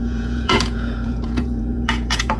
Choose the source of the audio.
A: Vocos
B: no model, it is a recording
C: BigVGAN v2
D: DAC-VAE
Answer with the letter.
A